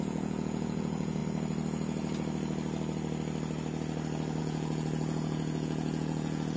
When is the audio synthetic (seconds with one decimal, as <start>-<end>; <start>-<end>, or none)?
0.0-1.2; 4.4-6.6